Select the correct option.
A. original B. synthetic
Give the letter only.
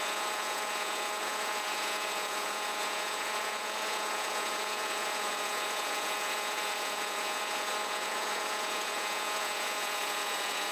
B